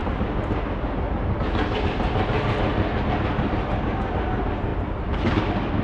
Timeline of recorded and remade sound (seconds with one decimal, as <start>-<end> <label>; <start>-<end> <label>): 0.0-4.7 recorded; 4.7-5.8 remade